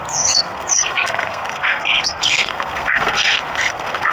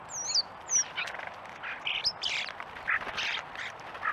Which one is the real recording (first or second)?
second